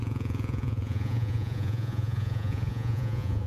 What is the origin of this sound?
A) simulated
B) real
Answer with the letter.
A